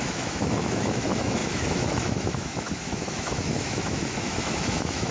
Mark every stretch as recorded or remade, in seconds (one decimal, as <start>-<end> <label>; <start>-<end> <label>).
0.0-5.1 remade